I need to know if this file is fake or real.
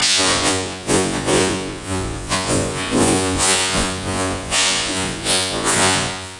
fake